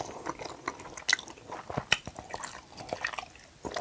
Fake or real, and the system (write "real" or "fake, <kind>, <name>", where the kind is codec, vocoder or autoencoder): real